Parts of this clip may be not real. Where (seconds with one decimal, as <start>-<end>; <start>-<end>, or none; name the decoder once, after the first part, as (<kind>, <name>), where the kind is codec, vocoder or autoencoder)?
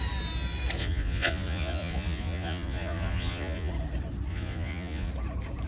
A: 0.8-3.7 (vocoder, Vocos); 4.3-5.1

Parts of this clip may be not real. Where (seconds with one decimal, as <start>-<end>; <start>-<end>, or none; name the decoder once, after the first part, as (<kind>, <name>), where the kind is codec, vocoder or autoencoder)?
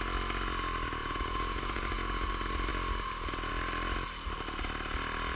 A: 1.0-2.3 (vocoder, Vocos)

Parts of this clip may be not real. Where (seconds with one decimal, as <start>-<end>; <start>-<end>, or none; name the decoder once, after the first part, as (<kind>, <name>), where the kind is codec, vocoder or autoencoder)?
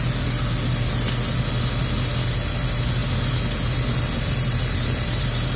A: none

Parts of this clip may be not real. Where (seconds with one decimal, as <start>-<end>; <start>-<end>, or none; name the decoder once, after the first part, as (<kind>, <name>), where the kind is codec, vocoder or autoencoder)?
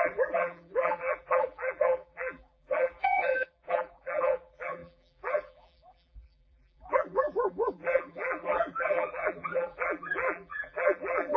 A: 0.0-11.4 (vocoder, BigVGAN v2)